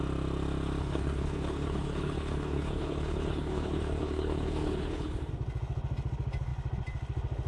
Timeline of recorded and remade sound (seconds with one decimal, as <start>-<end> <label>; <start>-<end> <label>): 0.0-0.8 recorded; 0.8-5.3 remade; 5.3-7.5 recorded